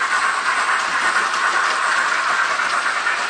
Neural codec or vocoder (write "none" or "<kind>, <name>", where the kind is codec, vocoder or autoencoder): none